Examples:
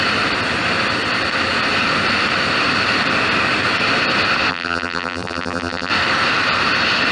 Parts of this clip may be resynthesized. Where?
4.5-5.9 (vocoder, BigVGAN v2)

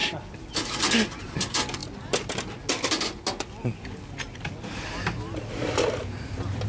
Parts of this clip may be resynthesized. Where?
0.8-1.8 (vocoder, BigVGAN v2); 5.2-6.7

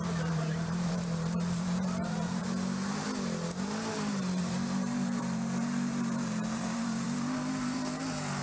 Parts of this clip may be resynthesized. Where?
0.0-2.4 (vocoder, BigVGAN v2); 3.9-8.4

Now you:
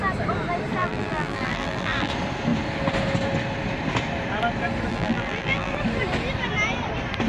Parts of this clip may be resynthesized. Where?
0.8-2.1 (vocoder, BigVGAN v2); 4.9-5.7

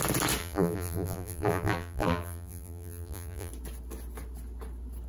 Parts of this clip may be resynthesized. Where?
0.4-3.5 (vocoder, BigVGAN v2)

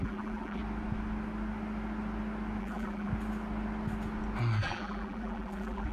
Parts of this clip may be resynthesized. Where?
0.0-0.6 (vocoder, BigVGAN v2); 2.6-3.1; 4.6-5.9

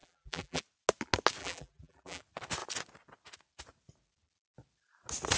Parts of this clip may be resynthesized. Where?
0.0-0.6 (vocoder, BigVGAN v2); 1.4-2.2

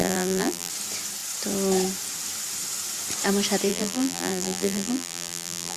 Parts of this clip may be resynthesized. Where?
0.0-0.7 (vocoder, BigVGAN v2); 3.7-5.8